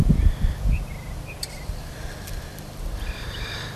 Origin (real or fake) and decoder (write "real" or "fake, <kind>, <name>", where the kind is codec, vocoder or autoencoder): real